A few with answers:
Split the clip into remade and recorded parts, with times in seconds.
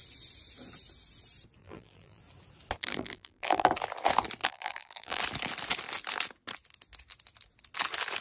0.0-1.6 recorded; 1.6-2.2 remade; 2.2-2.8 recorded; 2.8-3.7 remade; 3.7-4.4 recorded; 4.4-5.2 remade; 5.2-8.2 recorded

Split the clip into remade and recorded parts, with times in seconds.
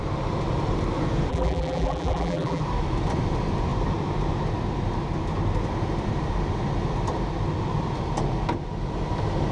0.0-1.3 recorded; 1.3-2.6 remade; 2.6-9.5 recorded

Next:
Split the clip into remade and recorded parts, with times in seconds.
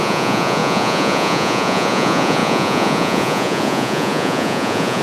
0.0-5.0 remade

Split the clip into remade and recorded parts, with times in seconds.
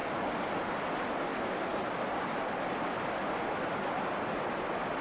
0.0-1.7 recorded; 1.7-5.0 remade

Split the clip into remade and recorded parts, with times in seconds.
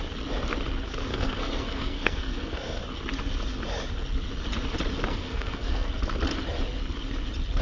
0.0-1.1 recorded; 1.1-2.8 remade; 2.8-5.1 recorded; 5.1-5.9 remade; 5.9-7.6 recorded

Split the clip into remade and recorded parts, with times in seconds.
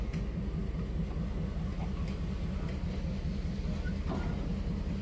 0.0-5.0 recorded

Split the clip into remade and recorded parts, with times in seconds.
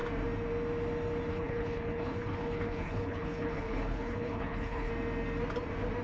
0.0-1.3 recorded; 1.3-4.9 remade; 4.9-6.0 recorded